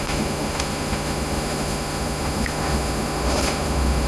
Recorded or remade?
remade